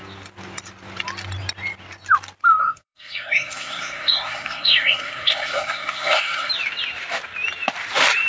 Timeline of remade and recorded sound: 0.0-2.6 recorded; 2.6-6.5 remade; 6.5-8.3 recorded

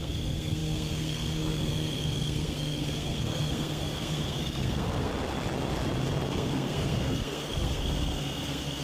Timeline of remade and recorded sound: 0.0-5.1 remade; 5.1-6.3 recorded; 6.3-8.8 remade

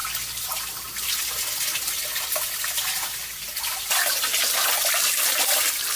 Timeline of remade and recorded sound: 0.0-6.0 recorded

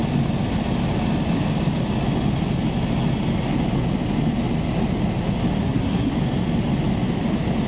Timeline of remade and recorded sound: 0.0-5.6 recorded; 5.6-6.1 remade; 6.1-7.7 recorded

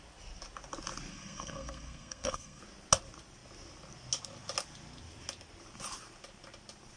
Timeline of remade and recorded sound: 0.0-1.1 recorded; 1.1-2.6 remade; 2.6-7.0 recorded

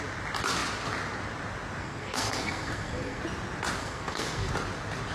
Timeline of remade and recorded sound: 0.0-1.8 recorded; 1.8-3.2 remade; 3.2-3.8 recorded; 3.8-4.5 remade; 4.5-5.1 recorded

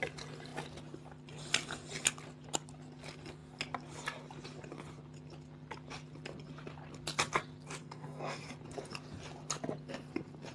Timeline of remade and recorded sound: 0.0-7.8 recorded; 7.8-8.4 remade; 8.4-10.5 recorded

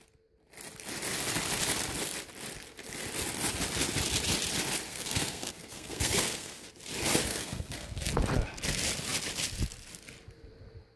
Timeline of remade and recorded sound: 0.0-4.9 recorded; 4.9-6.7 remade; 6.7-7.3 recorded; 7.3-8.1 remade; 8.1-11.0 recorded